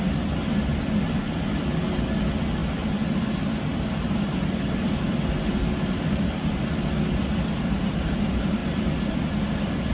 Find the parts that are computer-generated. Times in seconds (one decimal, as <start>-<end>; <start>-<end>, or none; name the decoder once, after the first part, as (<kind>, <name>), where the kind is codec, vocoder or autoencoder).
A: none

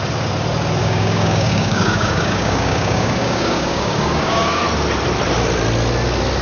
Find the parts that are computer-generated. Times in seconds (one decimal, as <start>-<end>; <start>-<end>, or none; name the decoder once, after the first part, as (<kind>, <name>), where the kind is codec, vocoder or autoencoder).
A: 0.8-4.6 (codec, DAC)

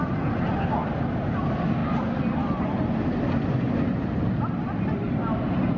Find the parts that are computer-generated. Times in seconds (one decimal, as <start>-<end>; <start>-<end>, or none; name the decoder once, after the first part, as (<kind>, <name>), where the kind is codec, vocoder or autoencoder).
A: none

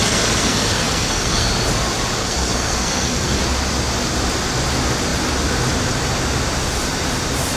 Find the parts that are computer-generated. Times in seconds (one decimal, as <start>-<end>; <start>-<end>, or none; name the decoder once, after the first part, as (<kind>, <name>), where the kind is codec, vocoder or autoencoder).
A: 0.0-1.5 (codec, SNAC); 2.2-3.4

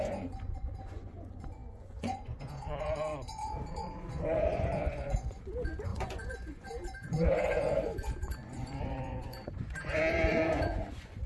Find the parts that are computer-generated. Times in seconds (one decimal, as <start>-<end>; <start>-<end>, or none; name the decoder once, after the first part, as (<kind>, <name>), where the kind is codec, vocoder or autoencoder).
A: 0.0-11.3 (vocoder, Vocos)

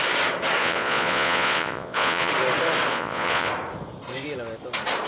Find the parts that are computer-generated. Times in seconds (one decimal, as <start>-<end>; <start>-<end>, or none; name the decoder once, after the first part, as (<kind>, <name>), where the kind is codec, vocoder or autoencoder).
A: 0.6-2.3 (vocoder, Vocos); 2.9-3.5